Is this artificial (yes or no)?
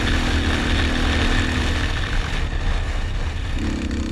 no